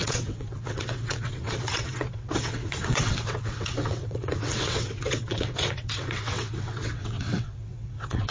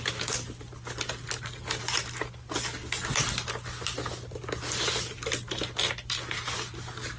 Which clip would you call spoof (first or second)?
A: first